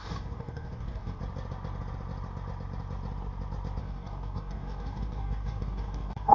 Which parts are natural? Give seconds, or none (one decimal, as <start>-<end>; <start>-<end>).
1.2-3.8